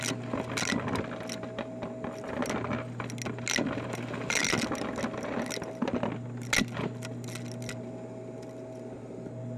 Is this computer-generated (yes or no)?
no